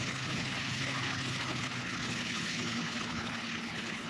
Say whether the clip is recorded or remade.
remade